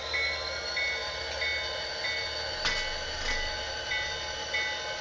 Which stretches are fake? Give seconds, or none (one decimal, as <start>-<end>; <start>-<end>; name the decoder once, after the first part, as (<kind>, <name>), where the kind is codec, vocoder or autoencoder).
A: none